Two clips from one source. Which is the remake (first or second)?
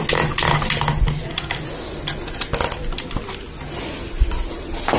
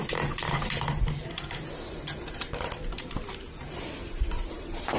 second